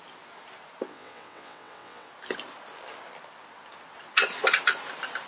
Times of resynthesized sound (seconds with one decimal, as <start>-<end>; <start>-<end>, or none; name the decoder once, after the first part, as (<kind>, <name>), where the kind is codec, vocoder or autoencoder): 0.9-2.1 (vocoder, WaveNeXt)